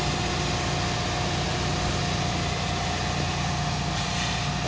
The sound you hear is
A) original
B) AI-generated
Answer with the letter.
A